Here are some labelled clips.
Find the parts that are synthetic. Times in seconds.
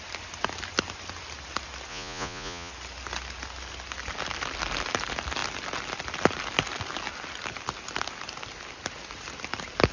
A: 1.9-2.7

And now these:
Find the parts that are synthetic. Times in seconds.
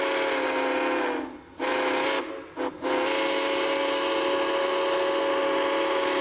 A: none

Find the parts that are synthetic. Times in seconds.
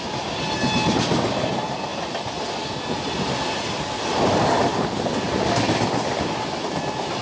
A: none